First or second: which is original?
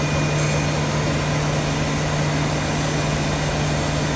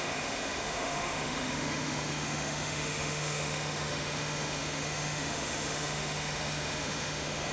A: first